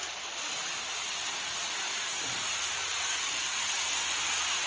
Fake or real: real